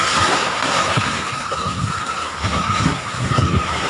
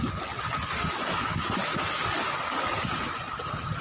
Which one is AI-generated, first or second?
first